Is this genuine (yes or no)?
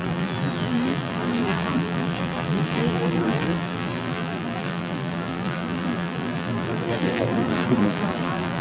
no